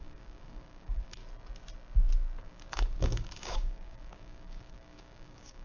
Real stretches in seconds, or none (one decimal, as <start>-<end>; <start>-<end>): 1.2-2.4